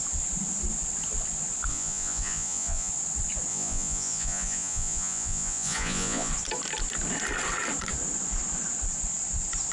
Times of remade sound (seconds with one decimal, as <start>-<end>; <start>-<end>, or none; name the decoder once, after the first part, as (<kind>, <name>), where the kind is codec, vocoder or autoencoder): 1.7-2.9 (vocoder, Vocos); 3.5-6.3